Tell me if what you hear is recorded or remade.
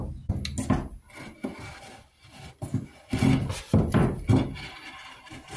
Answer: recorded